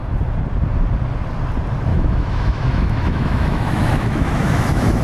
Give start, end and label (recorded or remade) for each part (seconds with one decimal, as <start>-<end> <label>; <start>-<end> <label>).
0.0-1.9 recorded; 1.9-5.0 remade